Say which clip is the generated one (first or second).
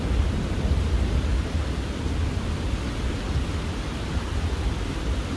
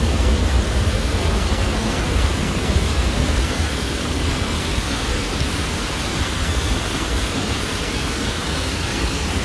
second